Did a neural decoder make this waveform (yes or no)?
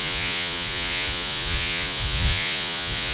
yes